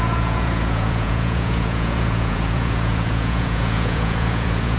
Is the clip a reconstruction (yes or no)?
yes